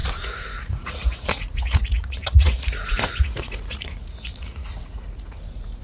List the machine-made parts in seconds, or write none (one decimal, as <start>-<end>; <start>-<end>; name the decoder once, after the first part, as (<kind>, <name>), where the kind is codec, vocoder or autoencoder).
0.0-5.8 (vocoder, Vocos)